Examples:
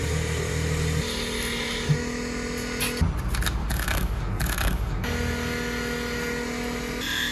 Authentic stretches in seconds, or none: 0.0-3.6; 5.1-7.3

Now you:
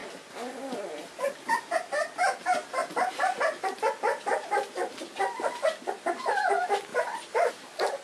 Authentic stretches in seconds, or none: 0.0-2.8; 3.4-8.0

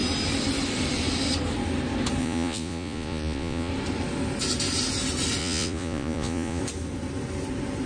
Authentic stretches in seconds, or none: 0.0-2.2; 3.7-5.4; 6.6-7.9